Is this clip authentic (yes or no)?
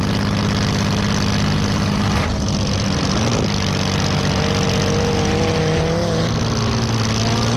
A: yes